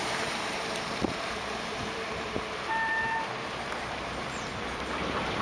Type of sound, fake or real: fake